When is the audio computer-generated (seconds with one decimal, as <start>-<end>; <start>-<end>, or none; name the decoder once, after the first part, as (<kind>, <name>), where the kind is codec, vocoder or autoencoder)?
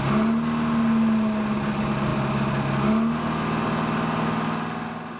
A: none